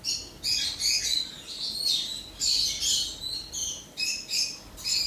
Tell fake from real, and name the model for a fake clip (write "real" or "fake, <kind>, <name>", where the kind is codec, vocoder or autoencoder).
real